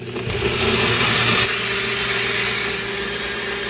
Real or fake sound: real